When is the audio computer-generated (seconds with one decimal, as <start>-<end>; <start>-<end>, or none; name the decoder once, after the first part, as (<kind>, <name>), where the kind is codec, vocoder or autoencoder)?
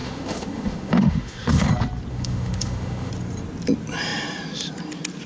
0.0-1.7 (autoencoder, DAC-VAE); 2.1-3.1